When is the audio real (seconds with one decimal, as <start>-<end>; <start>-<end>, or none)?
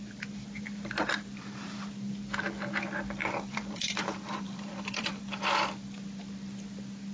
0.0-3.2; 5.2-7.1